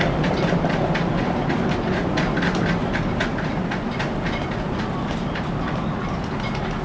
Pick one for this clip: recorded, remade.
recorded